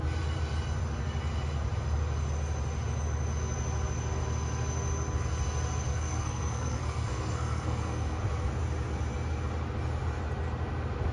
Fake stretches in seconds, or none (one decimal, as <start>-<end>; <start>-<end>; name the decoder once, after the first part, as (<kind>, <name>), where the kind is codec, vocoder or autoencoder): 5.9-8.2 (codec, SNAC)